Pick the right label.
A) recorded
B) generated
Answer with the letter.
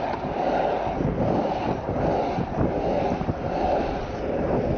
A